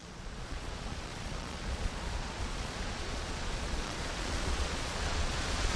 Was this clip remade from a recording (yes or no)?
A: yes